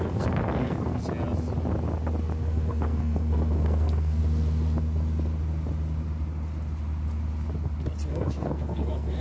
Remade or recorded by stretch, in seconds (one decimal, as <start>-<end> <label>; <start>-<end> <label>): 0.0-1.0 remade; 1.0-2.4 recorded; 2.4-4.2 remade; 4.2-8.1 recorded; 8.1-9.2 remade